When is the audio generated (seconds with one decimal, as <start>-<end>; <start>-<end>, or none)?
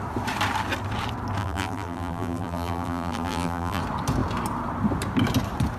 1.4-3.8